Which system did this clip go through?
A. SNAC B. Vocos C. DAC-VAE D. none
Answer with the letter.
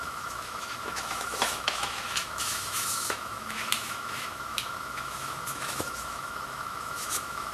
C